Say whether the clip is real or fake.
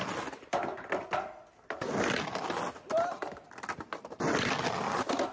real